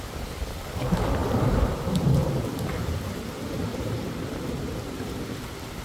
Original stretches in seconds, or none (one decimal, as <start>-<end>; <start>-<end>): 0.0-1.2; 1.8-2.2; 3.0-3.7; 4.4-5.8